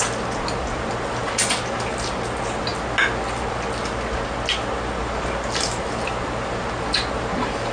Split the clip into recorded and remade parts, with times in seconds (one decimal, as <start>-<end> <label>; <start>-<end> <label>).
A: 0.0-7.7 recorded